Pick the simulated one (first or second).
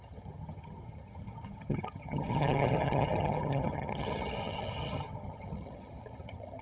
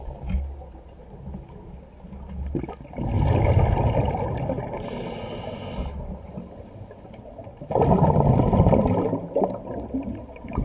first